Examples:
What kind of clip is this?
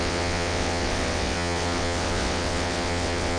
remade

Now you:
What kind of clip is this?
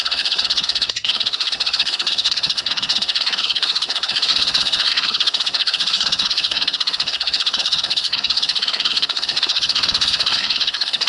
remade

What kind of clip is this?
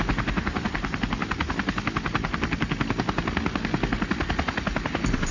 recorded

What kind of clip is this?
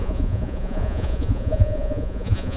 remade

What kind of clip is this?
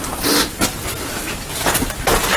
recorded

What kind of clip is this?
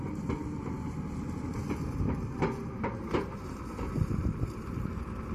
remade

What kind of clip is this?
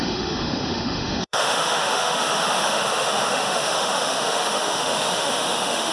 remade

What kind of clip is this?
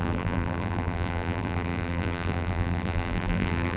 remade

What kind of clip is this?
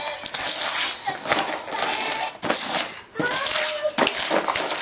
recorded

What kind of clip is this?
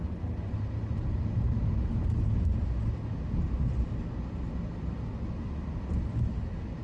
recorded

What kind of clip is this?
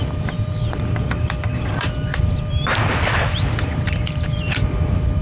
remade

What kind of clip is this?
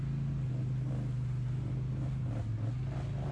recorded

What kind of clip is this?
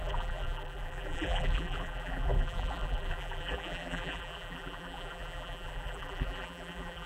remade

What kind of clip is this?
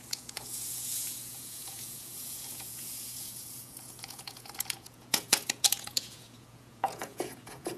remade